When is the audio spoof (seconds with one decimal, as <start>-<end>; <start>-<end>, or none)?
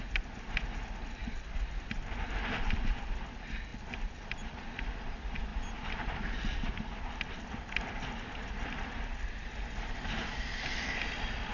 3.7-4.4; 5.5-9.6